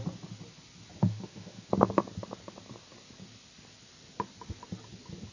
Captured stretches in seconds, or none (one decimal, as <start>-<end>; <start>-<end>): 0.0-1.0; 1.7-5.3